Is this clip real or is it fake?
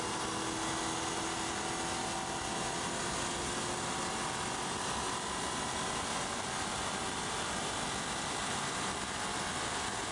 real